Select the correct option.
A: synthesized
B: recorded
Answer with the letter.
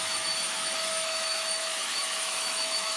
A